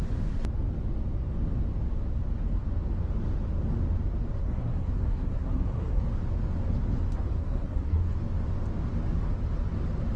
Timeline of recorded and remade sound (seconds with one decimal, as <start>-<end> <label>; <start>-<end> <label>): 0.0-4.4 recorded; 4.4-6.0 remade; 6.0-7.4 recorded; 7.4-8.1 remade; 8.1-10.2 recorded